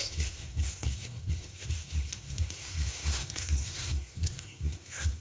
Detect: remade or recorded remade